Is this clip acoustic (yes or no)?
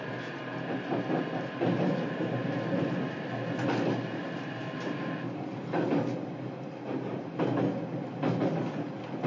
yes